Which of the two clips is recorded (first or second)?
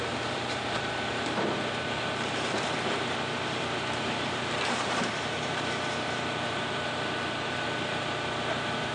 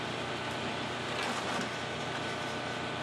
second